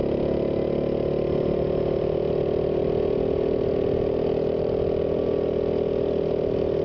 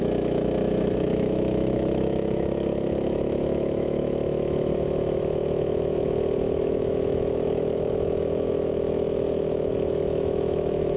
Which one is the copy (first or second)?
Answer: second